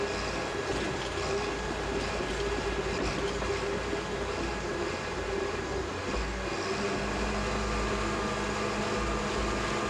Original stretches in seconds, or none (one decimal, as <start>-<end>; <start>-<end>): 0.0-4.5; 6.0-9.9

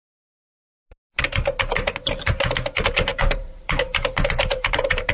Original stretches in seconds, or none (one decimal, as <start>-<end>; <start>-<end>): 0.0-3.1

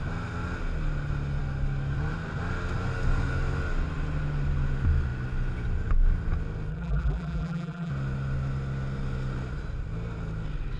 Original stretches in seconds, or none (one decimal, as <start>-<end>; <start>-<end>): 0.0-6.7; 7.9-10.8

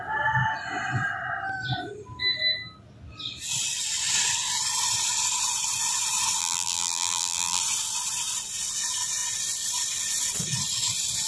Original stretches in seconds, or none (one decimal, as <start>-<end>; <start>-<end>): 0.0-6.4; 7.6-11.3